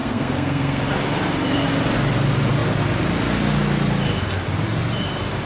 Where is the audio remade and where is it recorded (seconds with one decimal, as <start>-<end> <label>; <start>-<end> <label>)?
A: 0.0-0.8 remade; 0.8-5.5 recorded